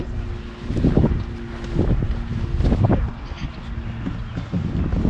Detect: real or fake real